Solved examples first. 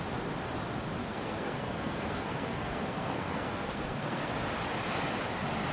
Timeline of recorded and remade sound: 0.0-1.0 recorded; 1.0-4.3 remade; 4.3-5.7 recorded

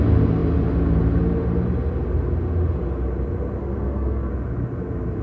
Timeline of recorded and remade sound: 0.0-3.6 recorded; 3.6-4.3 remade; 4.3-5.2 recorded

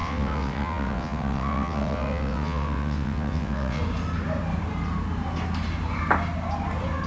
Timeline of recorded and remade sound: 0.0-3.8 remade; 3.8-7.1 recorded

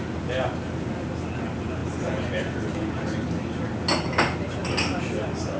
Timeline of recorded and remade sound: 0.0-5.6 recorded

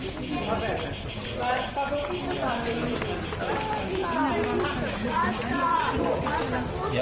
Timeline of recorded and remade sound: 0.0-5.0 recorded; 5.0-6.4 remade; 6.4-7.0 recorded